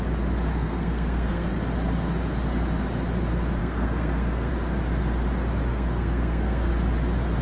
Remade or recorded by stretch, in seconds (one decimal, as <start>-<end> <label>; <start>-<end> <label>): 0.0-0.5 recorded; 0.5-1.5 remade; 1.5-3.6 recorded; 3.6-4.5 remade; 4.5-5.7 recorded; 5.7-6.7 remade; 6.7-7.4 recorded